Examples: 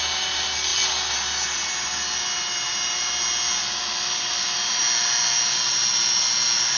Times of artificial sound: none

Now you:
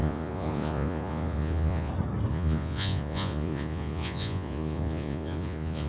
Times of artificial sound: 0.0-1.9 (vocoder, Vocos); 2.3-5.9

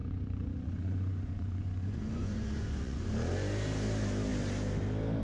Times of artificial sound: 0.0-3.1 (vocoder, Vocos)

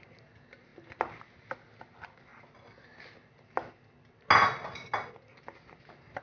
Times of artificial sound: none

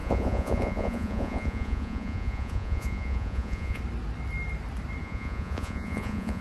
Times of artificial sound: 0.0-3.8 (vocoder, Vocos); 5.0-6.4

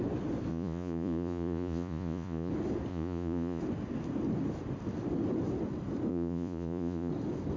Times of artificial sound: 0.5-2.5 (vocoder, Vocos); 2.9-3.6; 6.1-7.1